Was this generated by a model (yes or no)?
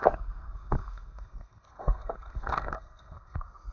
yes